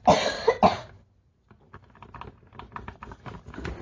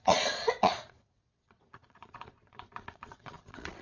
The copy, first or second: second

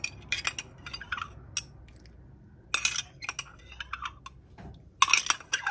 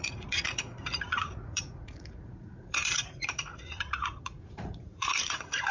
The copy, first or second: second